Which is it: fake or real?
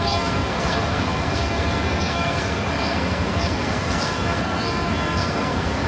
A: fake